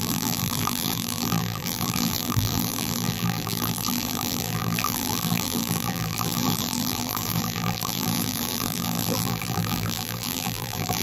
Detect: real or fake fake